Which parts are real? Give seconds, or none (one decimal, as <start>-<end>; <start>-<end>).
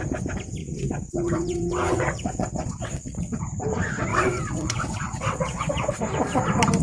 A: 0.0-0.6; 3.4-4.1; 6.0-6.8